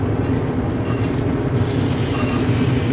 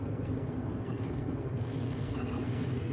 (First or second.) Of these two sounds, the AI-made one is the second